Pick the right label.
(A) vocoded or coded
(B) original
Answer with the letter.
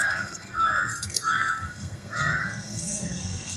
A